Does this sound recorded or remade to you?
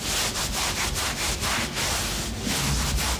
recorded